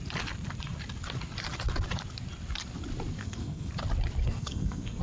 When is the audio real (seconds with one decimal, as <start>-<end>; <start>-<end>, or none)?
0.0-3.2; 3.7-4.2